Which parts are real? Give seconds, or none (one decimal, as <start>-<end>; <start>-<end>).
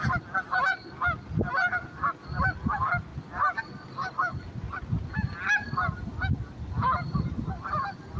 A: 0.0-8.2